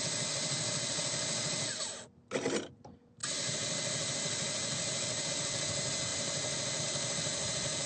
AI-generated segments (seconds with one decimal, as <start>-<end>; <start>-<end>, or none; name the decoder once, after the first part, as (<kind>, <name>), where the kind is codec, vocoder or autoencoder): none